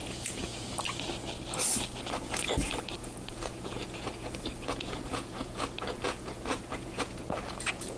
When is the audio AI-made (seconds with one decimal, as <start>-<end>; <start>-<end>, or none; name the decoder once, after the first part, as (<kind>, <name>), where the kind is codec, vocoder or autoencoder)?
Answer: 0.0-0.6 (vocoder, Vocos); 3.0-8.0

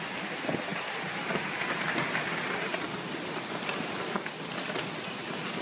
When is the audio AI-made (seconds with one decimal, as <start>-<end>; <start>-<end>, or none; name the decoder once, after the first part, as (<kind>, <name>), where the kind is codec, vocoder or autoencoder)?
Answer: none

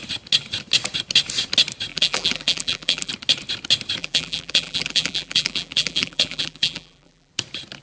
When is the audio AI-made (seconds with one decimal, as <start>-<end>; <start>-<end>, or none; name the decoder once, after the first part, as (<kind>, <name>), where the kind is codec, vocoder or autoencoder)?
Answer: 1.9-3.1 (vocoder, BigVGAN v2); 4.0-7.3

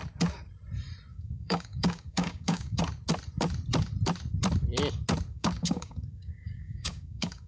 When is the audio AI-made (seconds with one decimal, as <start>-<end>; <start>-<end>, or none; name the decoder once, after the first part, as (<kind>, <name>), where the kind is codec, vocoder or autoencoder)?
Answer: 1.1-2.8 (codec, DAC); 5.3-7.5